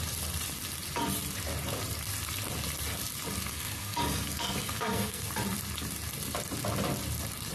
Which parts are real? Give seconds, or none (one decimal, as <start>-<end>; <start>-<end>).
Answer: 0.0-3.5; 5.3-7.5